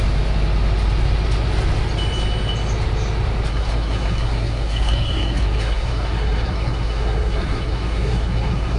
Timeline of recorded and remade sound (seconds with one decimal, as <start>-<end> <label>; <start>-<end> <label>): 0.0-3.5 recorded; 3.5-8.8 remade